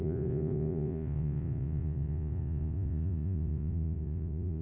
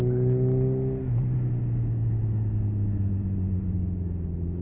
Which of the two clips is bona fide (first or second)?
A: second